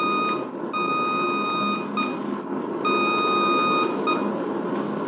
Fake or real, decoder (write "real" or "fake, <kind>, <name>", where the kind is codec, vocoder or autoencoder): real